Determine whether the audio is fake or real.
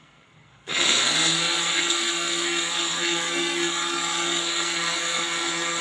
fake